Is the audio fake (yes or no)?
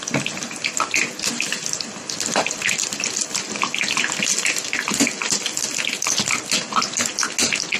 no